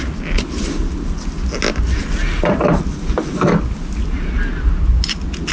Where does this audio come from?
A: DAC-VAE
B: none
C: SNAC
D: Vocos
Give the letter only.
B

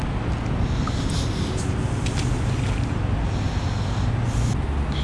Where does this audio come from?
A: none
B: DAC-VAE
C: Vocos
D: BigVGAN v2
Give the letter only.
A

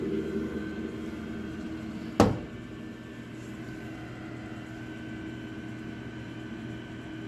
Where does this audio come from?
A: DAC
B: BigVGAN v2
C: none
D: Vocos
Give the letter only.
C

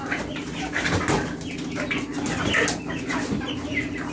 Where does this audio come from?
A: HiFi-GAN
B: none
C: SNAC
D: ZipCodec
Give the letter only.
B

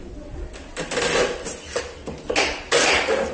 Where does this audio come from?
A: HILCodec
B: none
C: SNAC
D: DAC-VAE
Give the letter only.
B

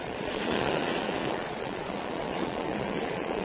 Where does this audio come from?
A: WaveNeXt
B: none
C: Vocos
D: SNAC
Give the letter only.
C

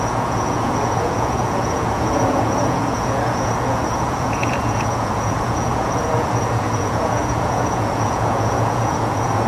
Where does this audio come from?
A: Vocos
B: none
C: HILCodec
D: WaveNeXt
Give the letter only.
A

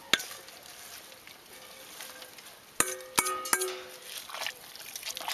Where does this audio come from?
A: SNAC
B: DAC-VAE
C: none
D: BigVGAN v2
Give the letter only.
C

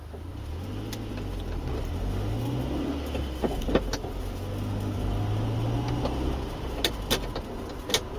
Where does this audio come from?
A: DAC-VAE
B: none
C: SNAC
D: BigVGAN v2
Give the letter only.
B